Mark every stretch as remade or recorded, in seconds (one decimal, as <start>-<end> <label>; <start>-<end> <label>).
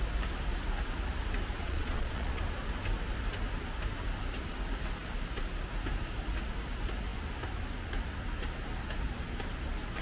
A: 0.0-1.6 recorded; 1.6-2.4 remade; 2.4-10.0 recorded